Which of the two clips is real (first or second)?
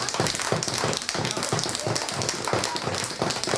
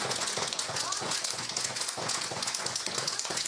first